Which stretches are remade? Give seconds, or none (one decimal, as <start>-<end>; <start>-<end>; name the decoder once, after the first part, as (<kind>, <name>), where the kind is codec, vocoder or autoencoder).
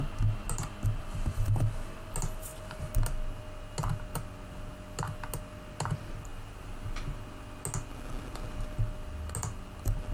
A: none